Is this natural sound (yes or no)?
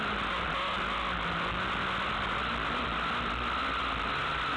yes